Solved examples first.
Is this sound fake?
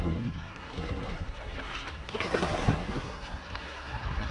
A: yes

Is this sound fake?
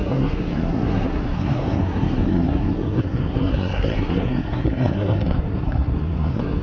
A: yes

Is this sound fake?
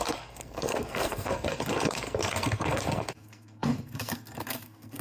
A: yes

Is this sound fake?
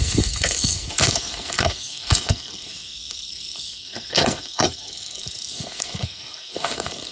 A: yes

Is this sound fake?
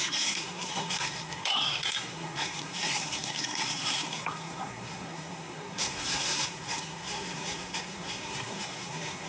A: yes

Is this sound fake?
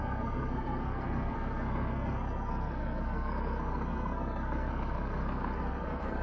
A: yes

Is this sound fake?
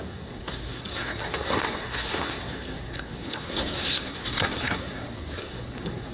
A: yes